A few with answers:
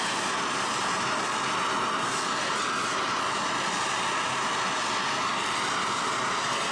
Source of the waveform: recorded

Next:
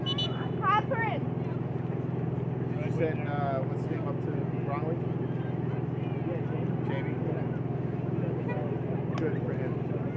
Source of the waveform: recorded